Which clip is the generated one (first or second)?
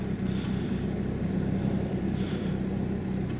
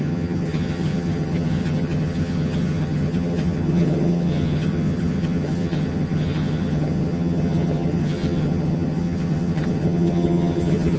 second